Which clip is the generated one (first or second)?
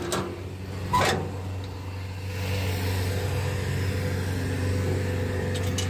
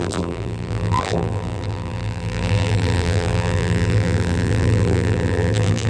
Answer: second